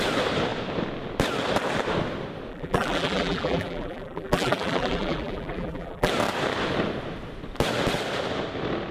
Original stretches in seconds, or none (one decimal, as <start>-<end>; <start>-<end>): 0.0-2.5; 6.1-8.9